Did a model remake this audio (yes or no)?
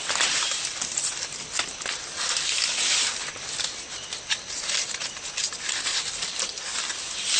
no